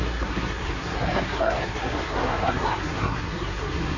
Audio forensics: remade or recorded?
remade